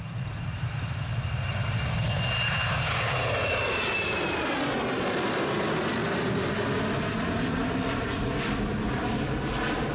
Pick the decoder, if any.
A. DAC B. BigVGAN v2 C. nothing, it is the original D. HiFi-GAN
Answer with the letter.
C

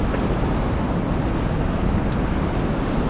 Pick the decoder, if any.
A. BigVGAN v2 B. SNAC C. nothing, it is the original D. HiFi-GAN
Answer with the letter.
C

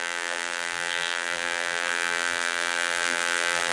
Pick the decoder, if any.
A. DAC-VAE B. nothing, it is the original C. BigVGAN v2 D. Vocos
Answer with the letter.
C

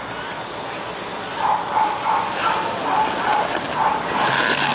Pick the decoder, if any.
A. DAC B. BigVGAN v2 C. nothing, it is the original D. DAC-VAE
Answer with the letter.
C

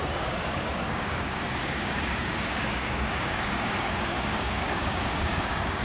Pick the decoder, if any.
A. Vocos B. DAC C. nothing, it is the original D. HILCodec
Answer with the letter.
B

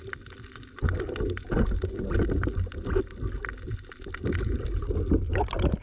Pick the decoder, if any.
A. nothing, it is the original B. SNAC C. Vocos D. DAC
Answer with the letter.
A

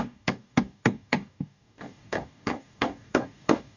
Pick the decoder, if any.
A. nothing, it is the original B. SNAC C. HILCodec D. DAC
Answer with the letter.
D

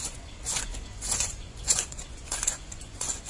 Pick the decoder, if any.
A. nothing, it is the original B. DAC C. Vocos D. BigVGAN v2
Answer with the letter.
C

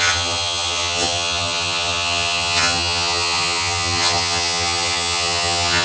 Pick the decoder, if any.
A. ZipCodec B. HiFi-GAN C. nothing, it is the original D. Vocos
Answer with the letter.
B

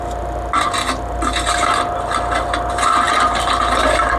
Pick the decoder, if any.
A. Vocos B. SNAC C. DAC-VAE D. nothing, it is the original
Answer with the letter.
D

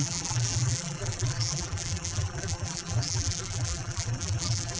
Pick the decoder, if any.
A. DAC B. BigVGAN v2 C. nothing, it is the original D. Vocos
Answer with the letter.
B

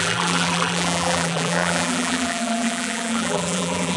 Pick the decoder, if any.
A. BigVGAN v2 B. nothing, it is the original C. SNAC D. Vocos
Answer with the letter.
A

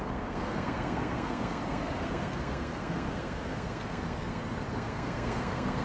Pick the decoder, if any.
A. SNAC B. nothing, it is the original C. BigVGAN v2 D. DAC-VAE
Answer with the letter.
A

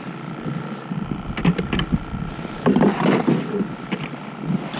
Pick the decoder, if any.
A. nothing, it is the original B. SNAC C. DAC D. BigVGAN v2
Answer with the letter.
A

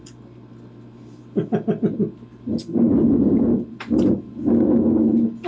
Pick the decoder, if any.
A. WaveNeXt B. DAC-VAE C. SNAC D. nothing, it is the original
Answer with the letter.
D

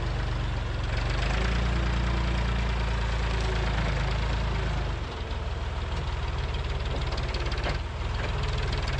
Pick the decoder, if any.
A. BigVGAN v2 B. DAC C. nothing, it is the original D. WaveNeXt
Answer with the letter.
C